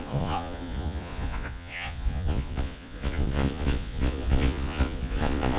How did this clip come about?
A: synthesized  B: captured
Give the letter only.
A